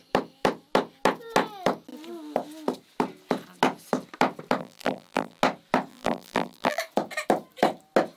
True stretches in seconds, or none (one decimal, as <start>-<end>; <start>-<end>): 0.0-4.6; 5.4-5.9; 6.8-8.2